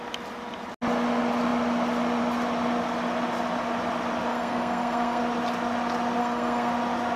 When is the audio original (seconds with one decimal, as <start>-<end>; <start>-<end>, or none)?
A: 0.0-4.3; 5.2-6.2; 6.7-7.2